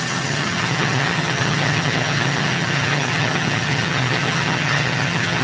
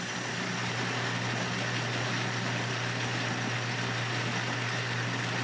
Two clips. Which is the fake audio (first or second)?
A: first